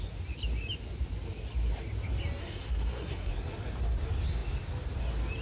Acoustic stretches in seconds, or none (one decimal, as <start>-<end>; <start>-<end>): 0.0-2.4; 3.3-5.4